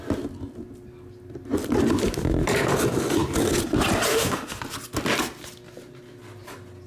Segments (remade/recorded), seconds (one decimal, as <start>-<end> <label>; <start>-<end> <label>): 0.0-4.1 recorded; 4.1-4.6 remade; 4.6-6.9 recorded